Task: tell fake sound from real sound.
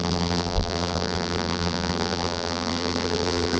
fake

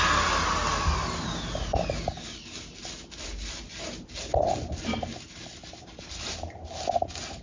real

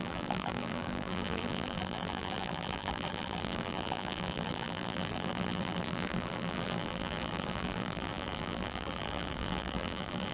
fake